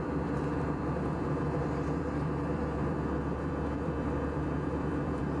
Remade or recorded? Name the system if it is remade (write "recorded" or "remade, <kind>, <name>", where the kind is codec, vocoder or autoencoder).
remade, vocoder, BigVGAN v2